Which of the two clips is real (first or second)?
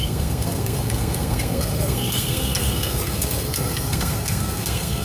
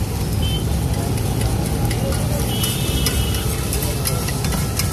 second